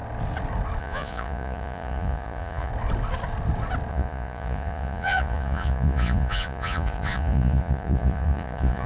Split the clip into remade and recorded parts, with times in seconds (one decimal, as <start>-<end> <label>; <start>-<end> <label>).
0.0-0.8 recorded; 0.8-2.7 remade; 2.7-3.9 recorded; 3.9-8.9 remade